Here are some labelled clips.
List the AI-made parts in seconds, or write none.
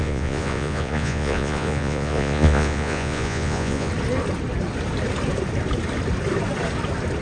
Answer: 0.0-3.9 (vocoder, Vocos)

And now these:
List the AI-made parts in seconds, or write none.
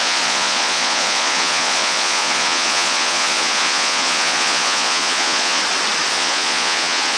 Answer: 0.0-5.6 (vocoder, Vocos); 6.1-7.2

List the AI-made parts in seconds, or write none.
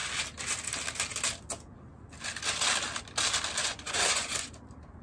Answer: 3.6-4.5 (vocoder, Vocos)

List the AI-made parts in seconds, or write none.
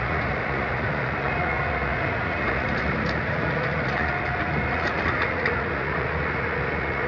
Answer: 0.0-7.1 (vocoder, Vocos)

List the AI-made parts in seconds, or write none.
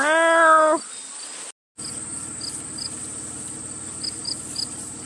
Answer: none